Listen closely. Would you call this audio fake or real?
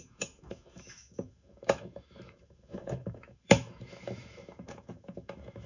fake